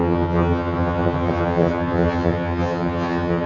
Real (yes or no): no